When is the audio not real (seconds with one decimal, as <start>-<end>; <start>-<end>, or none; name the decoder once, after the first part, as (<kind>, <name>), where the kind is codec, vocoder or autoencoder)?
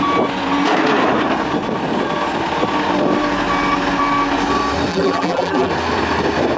4.9-5.7 (vocoder, BigVGAN v2)